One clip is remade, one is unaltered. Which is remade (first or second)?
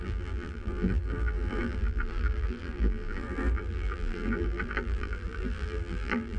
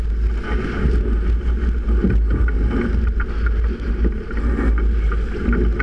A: first